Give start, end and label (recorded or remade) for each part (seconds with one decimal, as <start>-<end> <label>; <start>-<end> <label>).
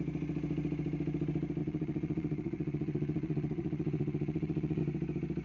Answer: 0.0-1.6 recorded; 1.6-4.8 remade; 4.8-5.4 recorded